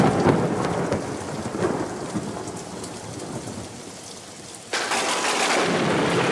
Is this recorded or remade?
recorded